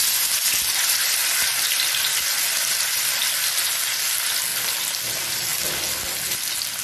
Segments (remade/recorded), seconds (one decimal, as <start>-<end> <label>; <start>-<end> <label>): 0.0-1.2 recorded; 1.2-3.3 remade; 3.3-4.5 recorded; 4.5-5.0 remade; 5.0-6.8 recorded